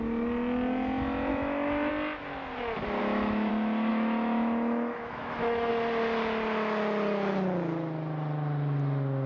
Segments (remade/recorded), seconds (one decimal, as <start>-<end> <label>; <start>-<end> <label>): 0.0-1.3 recorded; 1.3-1.9 remade; 1.9-3.0 recorded; 3.0-3.5 remade; 3.5-3.9 recorded; 3.9-5.7 remade; 5.7-9.3 recorded